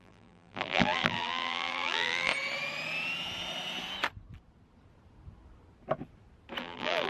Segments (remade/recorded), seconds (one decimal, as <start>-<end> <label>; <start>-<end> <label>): 0.0-2.3 remade; 2.3-6.6 recorded; 6.6-7.1 remade